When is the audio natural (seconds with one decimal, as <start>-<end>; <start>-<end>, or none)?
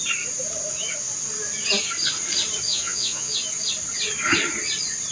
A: 0.0-2.7; 3.3-5.1